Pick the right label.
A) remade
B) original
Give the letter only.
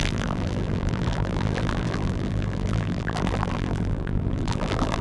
A